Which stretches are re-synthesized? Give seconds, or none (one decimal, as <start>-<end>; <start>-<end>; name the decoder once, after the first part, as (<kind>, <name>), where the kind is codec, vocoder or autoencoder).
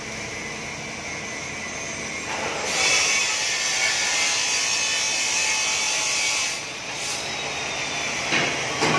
6.4-7.1 (vocoder, Vocos)